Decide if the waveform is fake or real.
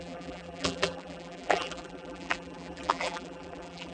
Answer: fake